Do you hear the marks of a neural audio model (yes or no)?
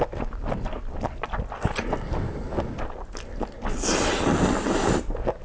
no